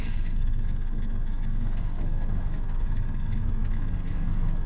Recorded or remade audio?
remade